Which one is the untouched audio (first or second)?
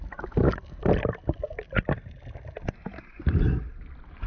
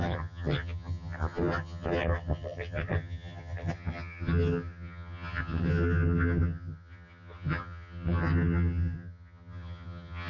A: first